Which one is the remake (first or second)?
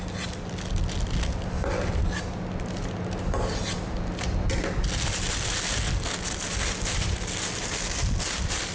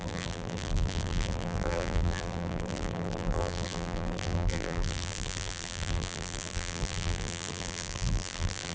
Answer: second